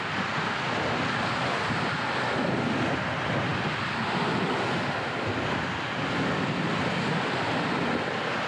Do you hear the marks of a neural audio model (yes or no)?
no